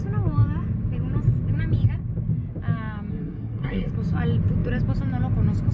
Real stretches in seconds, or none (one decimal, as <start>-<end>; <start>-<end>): 0.0-3.1; 3.9-5.7

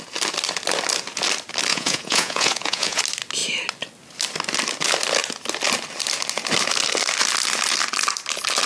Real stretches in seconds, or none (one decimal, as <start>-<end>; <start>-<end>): 0.0-1.7; 3.0-8.7